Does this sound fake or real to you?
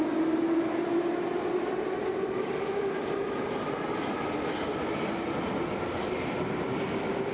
real